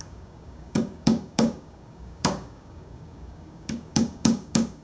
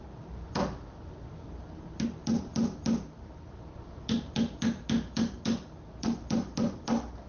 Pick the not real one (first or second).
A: first